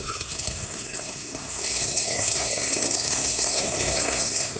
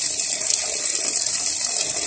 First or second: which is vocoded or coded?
first